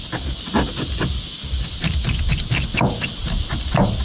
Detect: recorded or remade recorded